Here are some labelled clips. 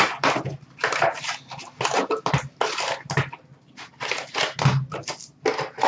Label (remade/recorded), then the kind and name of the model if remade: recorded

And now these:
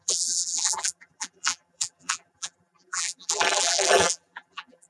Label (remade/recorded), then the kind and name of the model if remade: remade, vocoder, BigVGAN v2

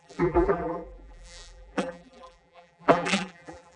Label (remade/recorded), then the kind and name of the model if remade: remade, vocoder, BigVGAN v2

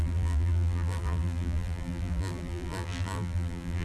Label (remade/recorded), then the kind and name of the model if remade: remade, vocoder, BigVGAN v2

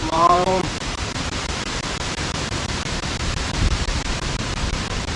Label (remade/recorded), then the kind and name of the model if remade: remade, vocoder, BigVGAN v2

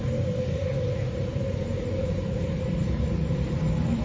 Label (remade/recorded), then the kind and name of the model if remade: remade, vocoder, BigVGAN v2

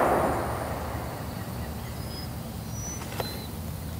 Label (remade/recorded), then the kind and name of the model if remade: recorded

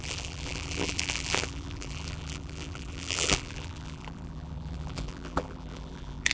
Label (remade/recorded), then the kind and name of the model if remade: remade, vocoder, BigVGAN v2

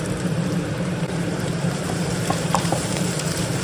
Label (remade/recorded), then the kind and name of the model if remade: remade, vocoder, BigVGAN v2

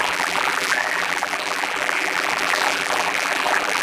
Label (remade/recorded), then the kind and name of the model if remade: remade, vocoder, BigVGAN v2